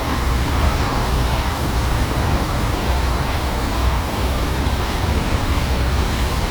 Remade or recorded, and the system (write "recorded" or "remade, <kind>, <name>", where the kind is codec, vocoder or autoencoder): remade, codec, DAC